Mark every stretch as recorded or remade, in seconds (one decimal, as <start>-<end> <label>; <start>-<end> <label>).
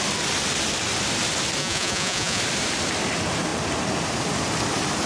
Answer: 0.0-1.6 recorded; 1.6-2.4 remade; 2.4-5.1 recorded